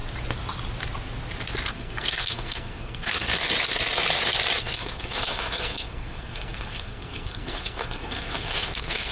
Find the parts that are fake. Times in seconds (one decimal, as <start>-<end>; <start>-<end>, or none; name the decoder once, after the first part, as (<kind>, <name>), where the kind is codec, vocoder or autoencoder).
1.7-3.4 (codec, SNAC); 4.6-9.1